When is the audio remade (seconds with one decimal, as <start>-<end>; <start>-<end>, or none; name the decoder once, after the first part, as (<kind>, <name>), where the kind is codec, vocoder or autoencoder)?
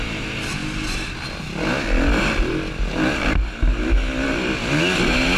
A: none